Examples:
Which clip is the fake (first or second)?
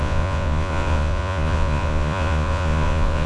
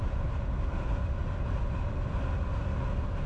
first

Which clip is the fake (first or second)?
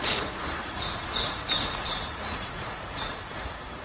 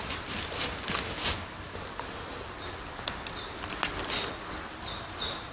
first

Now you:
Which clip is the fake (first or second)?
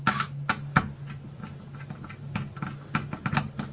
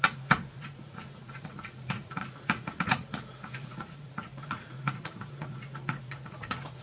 second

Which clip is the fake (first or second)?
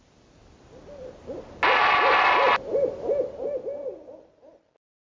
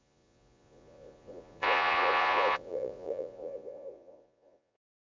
second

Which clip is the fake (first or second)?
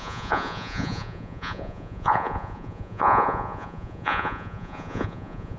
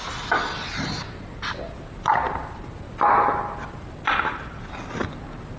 first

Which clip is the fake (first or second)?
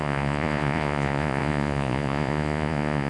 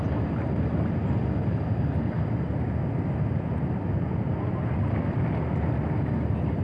first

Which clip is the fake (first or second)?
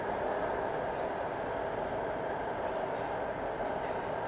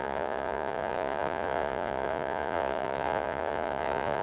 second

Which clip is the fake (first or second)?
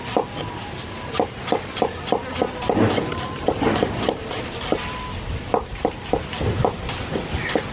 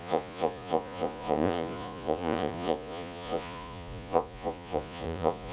second